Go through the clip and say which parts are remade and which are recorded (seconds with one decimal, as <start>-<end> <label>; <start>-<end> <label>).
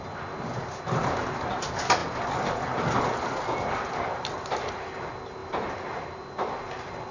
0.0-5.4 recorded; 5.4-6.3 remade; 6.3-7.1 recorded